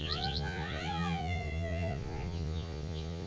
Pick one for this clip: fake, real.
fake